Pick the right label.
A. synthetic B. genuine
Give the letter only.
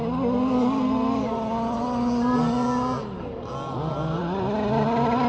B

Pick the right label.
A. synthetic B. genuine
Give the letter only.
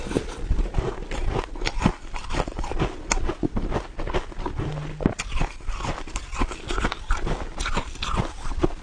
B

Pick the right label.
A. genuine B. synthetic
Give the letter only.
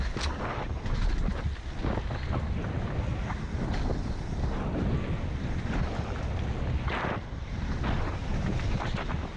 A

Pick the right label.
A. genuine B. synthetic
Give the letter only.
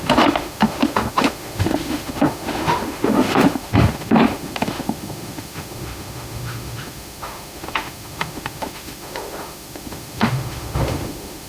B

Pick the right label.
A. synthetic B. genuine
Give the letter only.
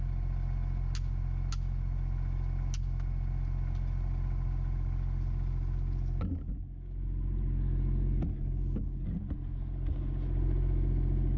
B